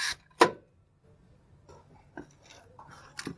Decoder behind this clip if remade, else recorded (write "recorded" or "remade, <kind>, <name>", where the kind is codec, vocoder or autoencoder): recorded